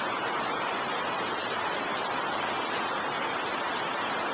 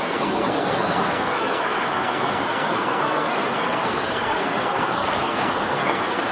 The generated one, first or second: second